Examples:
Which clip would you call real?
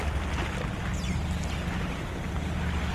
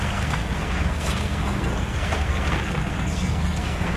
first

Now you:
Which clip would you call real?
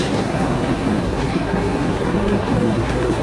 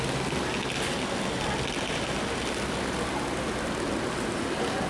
second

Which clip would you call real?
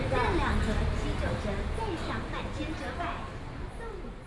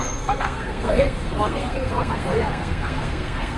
first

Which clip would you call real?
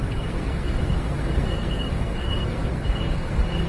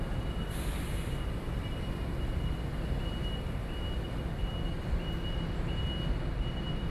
second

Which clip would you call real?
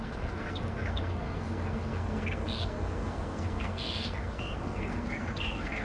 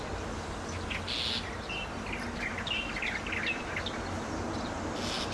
second